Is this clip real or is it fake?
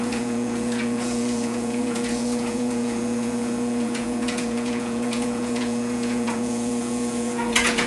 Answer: fake